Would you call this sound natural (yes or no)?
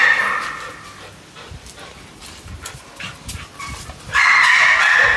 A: yes